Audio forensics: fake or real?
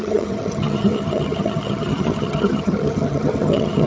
fake